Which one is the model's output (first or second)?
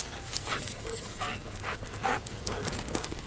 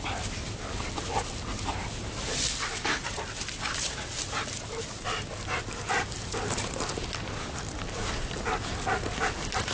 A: first